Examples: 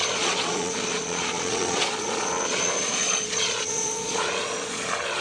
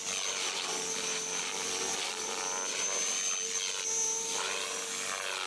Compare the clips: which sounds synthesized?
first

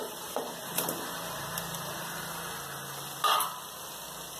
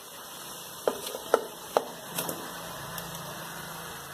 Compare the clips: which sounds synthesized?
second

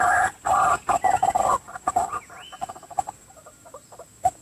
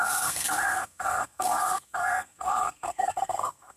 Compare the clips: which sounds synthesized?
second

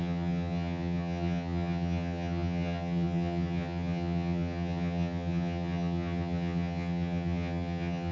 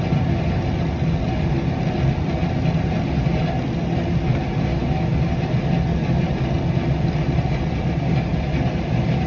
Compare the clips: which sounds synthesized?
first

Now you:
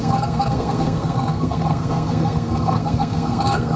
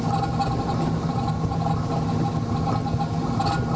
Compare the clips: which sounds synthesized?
first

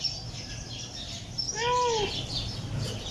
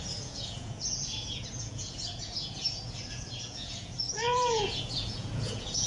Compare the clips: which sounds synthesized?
second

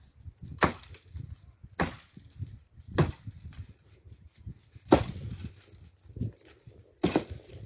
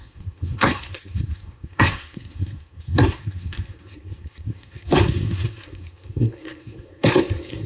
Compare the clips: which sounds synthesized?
second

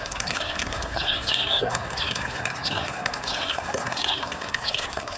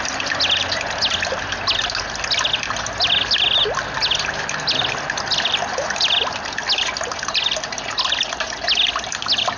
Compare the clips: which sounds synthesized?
first